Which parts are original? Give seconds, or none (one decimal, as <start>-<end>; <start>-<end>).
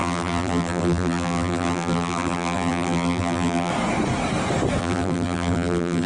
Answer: 3.7-4.8